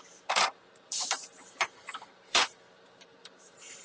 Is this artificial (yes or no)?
yes